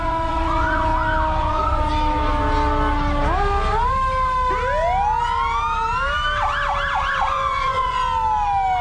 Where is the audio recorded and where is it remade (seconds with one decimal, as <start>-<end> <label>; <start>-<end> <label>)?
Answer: 0.0-0.9 remade; 0.9-1.4 recorded; 1.4-1.9 remade; 1.9-7.0 recorded; 7.0-8.0 remade; 8.0-8.8 recorded